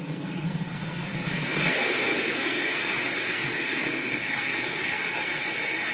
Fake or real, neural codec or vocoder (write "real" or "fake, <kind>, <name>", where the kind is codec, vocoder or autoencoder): fake, codec, SNAC